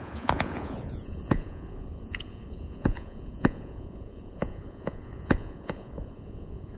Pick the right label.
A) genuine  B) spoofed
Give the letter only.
B